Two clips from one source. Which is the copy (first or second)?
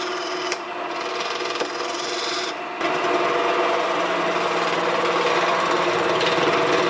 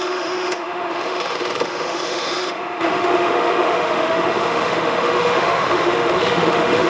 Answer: second